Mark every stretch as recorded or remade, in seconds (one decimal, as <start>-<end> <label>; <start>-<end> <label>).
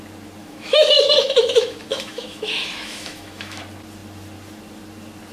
0.0-0.4 recorded; 0.4-3.6 remade; 3.6-5.3 recorded